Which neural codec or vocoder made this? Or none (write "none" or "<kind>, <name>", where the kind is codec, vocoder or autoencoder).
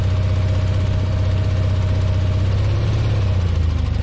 none